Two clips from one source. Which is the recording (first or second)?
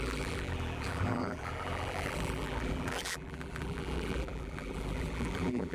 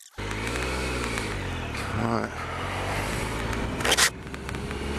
second